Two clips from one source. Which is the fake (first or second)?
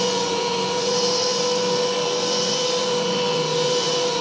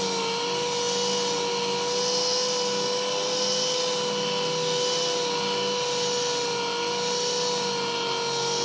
first